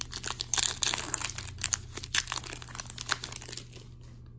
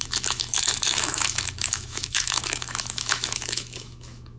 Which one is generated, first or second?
second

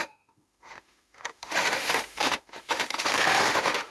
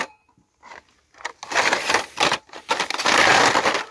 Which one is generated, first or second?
first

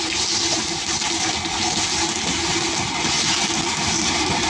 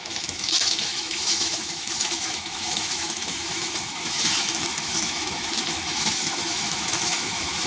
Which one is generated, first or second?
second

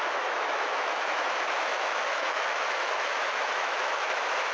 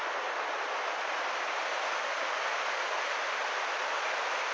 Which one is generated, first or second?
first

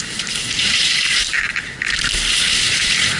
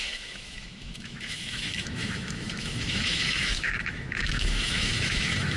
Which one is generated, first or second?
second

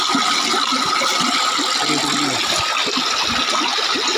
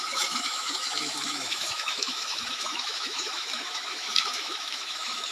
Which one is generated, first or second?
second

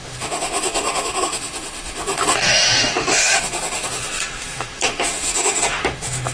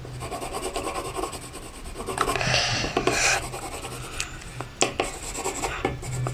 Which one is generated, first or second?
first